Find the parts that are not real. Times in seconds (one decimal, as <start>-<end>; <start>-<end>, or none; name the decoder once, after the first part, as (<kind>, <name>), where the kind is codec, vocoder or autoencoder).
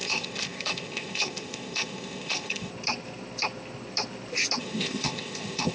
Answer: 0.0-2.7 (codec, ZipCodec); 4.6-5.7